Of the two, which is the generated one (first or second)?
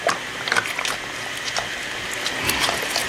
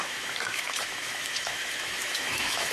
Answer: second